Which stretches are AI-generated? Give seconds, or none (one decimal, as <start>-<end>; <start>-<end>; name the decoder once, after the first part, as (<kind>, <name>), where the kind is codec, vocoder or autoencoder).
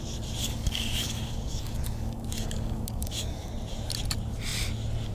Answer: 0.4-3.5 (codec, DAC)